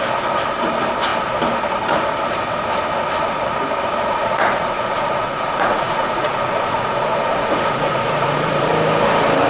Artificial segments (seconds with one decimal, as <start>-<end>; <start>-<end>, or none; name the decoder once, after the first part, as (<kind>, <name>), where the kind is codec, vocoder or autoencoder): 4.1-8.7 (vocoder, Vocos)